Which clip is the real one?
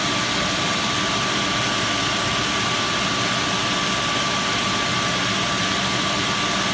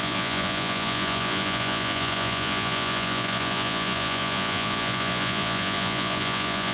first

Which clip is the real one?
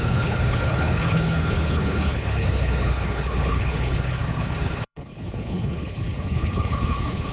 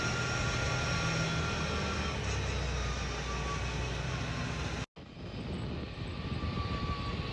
second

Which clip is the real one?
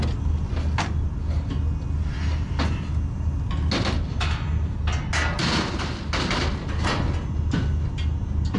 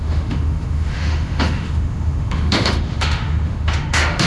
first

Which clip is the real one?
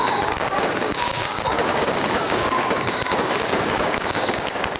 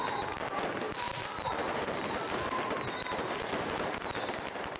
second